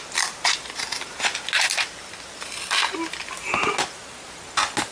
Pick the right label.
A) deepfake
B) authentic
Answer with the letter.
B